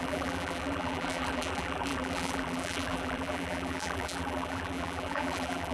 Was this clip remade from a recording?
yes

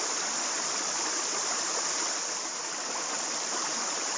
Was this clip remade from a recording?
no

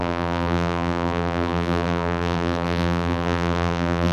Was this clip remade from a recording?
yes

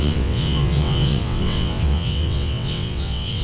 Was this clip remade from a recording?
yes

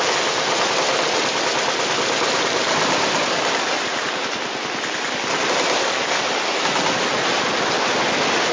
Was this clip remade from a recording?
no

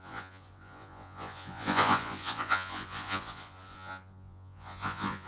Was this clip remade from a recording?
yes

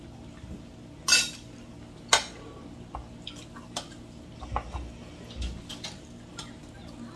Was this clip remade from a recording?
no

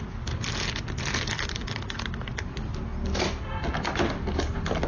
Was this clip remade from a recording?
no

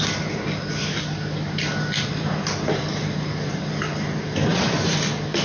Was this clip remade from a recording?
no